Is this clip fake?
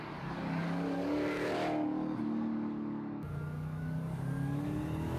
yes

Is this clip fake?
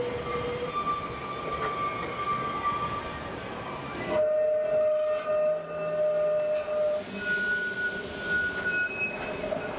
no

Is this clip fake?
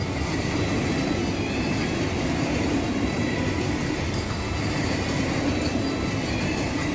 no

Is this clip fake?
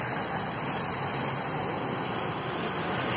no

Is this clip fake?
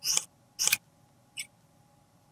no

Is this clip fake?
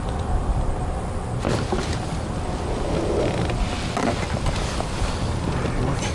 no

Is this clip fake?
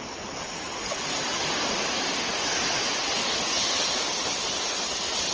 no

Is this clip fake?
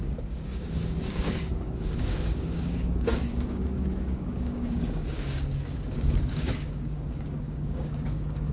yes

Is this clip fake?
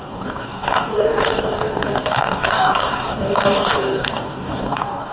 yes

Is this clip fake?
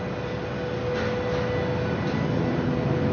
no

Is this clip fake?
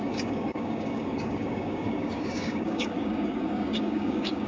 yes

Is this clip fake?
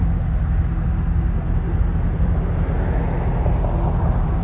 no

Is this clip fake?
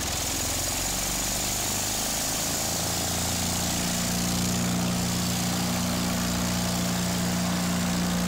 no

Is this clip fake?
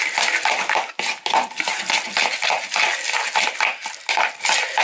no